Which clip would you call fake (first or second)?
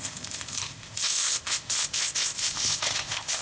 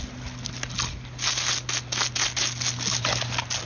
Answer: first